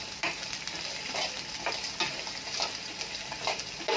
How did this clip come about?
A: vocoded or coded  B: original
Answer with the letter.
B